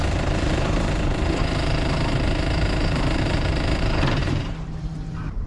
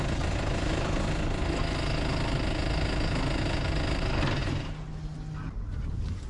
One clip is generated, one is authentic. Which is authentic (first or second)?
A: second